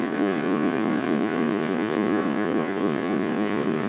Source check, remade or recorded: remade